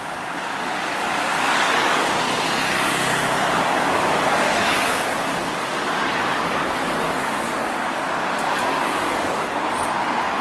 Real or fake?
fake